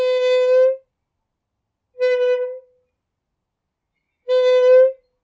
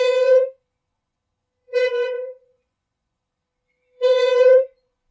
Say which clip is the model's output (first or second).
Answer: second